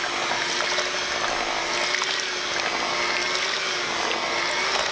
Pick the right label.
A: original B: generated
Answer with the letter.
A